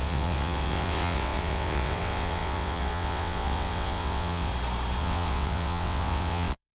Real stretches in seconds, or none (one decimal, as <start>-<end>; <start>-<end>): 4.5-5.0